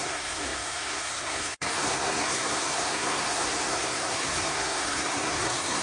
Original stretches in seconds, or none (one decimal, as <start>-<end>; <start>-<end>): none